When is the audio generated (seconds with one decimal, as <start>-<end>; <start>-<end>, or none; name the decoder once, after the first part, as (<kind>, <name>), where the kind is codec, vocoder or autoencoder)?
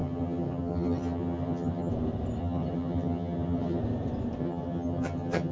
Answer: 0.0-1.9 (vocoder, HiFi-GAN); 2.4-3.8; 4.4-5.5